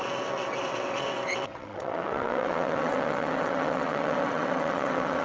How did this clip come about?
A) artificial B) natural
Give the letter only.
A